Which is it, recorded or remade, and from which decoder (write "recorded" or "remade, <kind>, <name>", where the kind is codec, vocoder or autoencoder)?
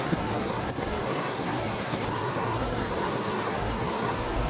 remade, codec, SNAC